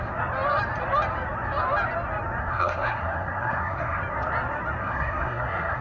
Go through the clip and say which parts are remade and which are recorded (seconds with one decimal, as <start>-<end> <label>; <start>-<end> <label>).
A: 0.0-2.4 recorded; 2.4-4.0 remade; 4.0-4.8 recorded; 4.8-5.8 remade